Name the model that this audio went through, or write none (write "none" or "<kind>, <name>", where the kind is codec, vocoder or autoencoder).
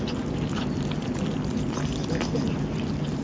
none